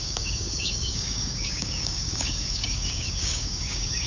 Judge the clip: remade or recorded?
remade